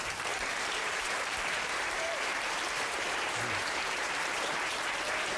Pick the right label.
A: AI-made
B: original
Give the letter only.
A